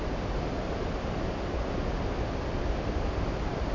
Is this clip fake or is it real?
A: real